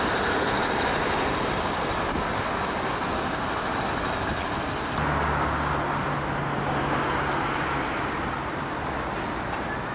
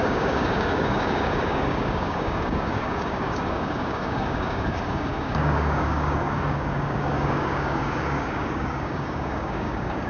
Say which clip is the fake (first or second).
second